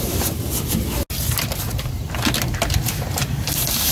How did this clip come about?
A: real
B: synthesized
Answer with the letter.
A